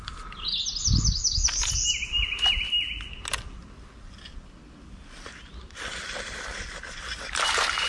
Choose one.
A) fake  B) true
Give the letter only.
B